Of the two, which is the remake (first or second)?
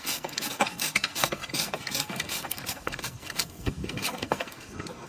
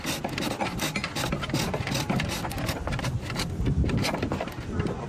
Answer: first